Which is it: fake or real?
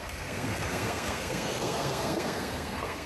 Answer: fake